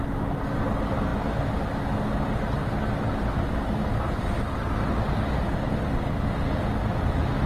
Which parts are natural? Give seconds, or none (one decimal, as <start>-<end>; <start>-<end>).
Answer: 0.0-7.5